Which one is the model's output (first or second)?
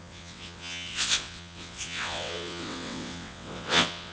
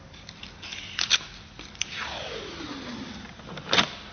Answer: first